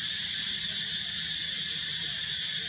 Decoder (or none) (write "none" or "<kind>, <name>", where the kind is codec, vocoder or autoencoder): vocoder, BigVGAN v2